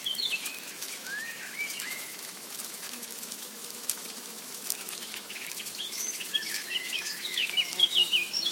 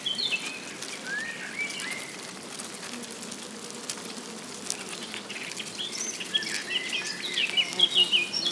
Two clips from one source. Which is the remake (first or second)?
first